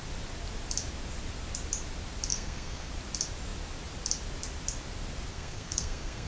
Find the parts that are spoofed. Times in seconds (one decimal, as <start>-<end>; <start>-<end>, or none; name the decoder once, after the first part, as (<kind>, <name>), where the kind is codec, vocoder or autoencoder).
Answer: 2.3-2.9 (codec, SNAC); 5.3-6.3